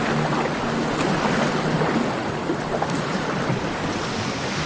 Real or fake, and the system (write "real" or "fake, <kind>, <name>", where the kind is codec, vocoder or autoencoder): real